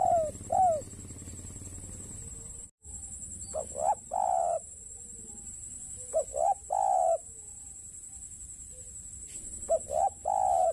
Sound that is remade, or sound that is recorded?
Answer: recorded